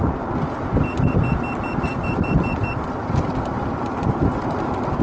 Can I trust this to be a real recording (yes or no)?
no